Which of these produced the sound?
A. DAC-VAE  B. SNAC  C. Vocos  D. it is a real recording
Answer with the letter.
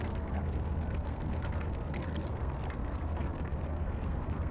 B